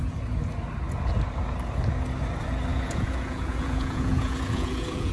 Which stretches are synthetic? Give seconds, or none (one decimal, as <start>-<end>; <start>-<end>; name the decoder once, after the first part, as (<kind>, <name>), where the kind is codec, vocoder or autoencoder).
2.7-5.1 (vocoder, Vocos)